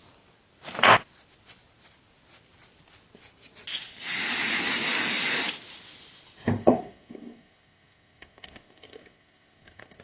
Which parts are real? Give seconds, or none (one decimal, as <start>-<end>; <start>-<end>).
0.0-6.6